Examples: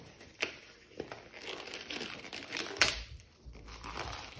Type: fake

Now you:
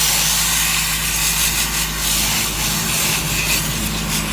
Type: real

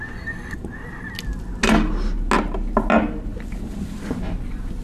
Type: real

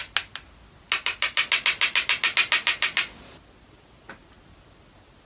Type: real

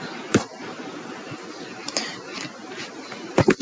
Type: real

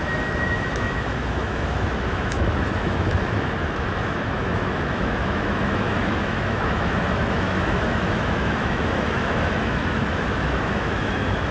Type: fake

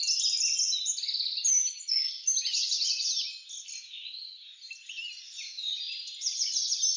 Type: real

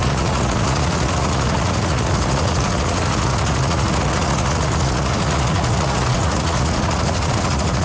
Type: fake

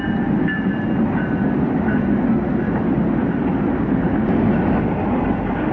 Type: real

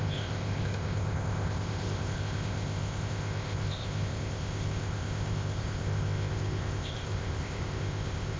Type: fake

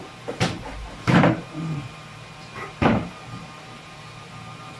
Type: fake